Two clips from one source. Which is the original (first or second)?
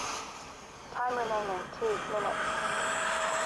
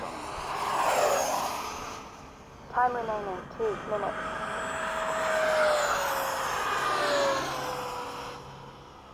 second